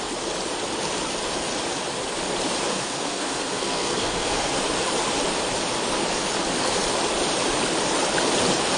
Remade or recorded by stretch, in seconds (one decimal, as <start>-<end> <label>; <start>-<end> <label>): 0.0-2.7 recorded; 2.7-4.6 remade; 4.6-8.8 recorded